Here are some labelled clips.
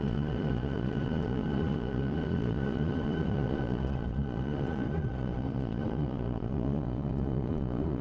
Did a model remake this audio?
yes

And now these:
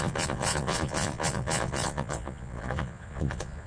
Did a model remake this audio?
yes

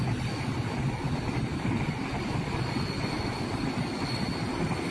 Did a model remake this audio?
no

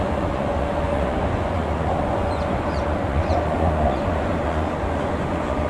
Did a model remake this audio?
yes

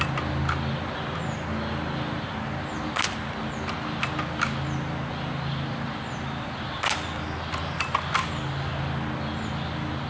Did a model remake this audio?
no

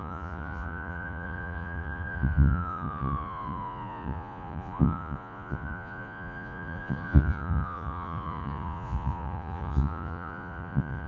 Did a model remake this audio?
yes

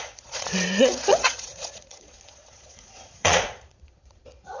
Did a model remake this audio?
yes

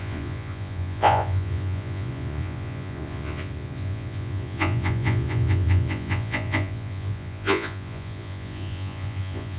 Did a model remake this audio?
yes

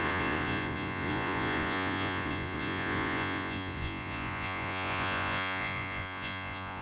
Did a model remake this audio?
yes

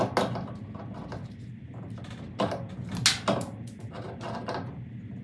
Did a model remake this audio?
no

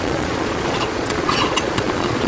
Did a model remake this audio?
yes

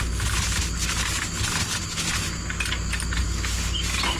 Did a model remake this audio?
no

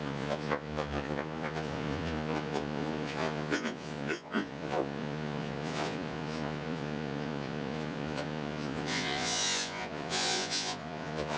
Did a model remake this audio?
yes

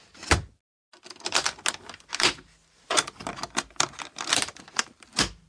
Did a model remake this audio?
no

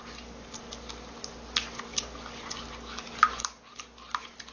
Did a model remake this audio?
no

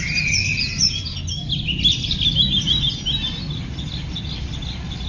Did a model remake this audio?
no